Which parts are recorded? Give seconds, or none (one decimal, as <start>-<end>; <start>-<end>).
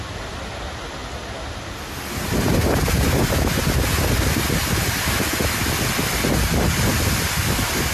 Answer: 0.0-7.9